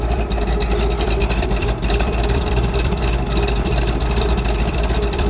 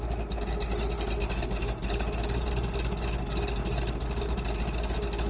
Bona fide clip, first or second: second